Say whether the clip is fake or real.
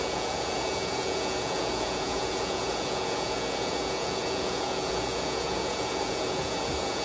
fake